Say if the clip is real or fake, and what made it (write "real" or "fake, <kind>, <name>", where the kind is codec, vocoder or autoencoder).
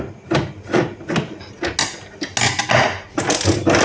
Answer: real